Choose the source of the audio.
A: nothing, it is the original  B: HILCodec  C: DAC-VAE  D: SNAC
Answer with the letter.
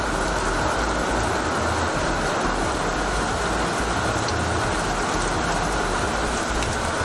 A